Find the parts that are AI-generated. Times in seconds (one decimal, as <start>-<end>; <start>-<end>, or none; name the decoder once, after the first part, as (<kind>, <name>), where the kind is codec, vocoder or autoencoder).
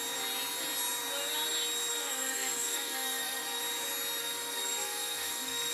1.9-3.6 (codec, SNAC); 4.2-5.7